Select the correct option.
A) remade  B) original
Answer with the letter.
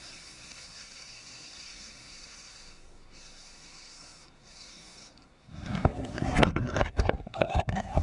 A